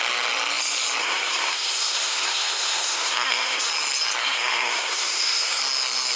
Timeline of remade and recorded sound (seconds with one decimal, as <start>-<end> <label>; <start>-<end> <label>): 0.0-1.0 recorded; 1.0-3.7 remade; 3.7-4.2 recorded; 4.2-5.6 remade; 5.6-6.2 recorded